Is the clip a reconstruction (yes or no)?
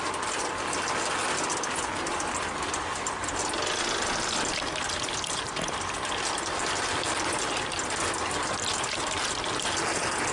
no